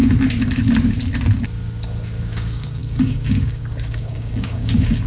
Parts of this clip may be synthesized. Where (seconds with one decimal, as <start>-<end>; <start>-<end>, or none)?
2.2-5.1

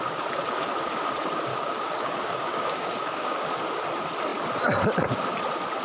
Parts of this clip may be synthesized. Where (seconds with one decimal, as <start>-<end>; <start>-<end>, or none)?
1.5-3.4

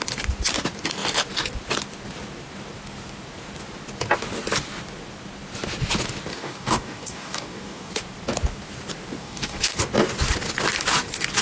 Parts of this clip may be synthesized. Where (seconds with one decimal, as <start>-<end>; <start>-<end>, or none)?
6.3-7.9; 9.2-9.8